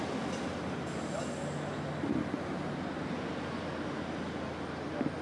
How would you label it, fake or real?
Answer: real